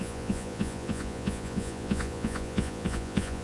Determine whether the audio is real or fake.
fake